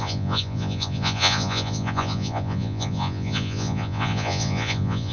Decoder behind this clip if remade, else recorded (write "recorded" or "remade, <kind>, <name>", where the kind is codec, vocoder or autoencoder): remade, vocoder, Vocos